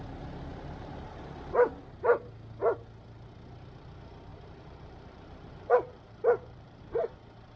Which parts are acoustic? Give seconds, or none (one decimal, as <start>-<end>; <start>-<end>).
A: 0.0-0.5; 1.8-4.3; 6.8-7.6